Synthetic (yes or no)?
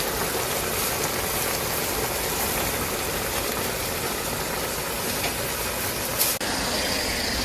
no